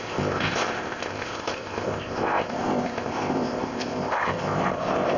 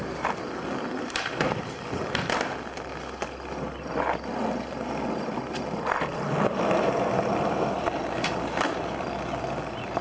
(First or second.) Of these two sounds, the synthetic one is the first